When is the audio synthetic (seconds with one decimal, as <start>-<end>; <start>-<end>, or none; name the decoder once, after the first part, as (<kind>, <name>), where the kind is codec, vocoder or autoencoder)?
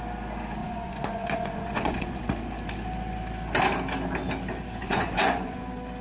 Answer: 0.6-2.2 (vocoder, Vocos); 4.8-5.6